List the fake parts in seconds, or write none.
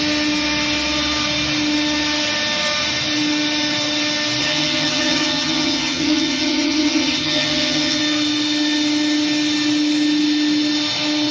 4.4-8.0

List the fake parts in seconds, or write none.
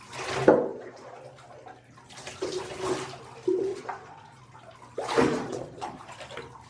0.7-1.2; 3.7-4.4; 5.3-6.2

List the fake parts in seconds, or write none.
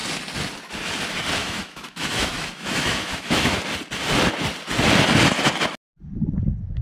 1.4-3.6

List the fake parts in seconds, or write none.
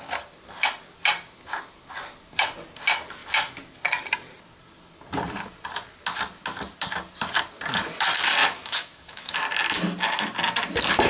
8.4-9.3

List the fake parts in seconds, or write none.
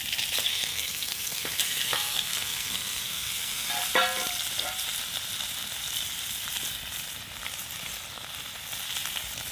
0.5-3.7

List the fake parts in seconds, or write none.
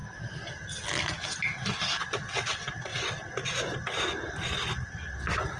none